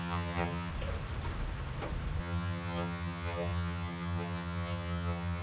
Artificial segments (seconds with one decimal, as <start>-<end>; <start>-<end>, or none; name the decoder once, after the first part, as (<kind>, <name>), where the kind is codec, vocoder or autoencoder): 0.0-0.7 (vocoder, HiFi-GAN); 2.2-5.4